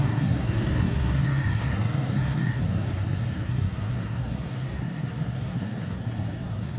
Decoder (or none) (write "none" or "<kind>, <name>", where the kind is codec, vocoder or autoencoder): codec, SNAC